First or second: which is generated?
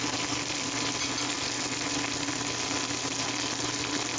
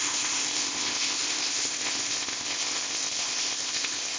second